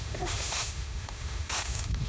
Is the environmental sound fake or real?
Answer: fake